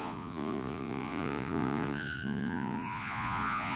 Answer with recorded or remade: remade